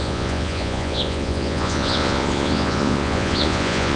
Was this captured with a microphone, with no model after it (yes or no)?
no